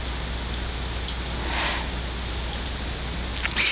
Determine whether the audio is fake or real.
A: real